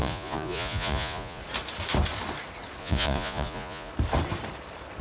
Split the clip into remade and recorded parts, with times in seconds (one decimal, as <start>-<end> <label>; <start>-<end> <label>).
0.0-1.4 remade; 1.4-2.8 recorded; 2.8-3.9 remade; 3.9-5.0 recorded